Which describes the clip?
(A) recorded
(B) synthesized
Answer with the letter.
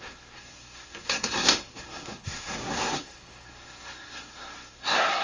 B